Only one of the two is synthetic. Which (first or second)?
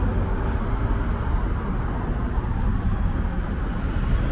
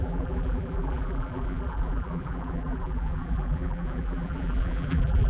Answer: second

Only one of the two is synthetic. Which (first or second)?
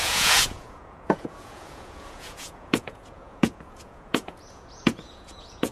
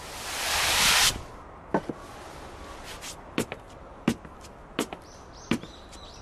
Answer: first